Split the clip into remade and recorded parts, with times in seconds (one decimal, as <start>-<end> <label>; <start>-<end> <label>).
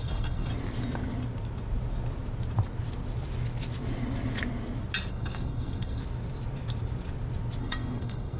0.0-0.5 remade; 0.5-5.1 recorded; 5.1-6.0 remade; 6.0-7.6 recorded; 7.6-8.4 remade